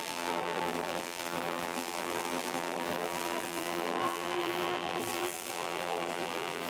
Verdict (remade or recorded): remade